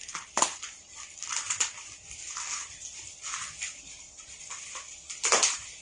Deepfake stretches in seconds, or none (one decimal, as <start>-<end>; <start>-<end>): 0.0-5.8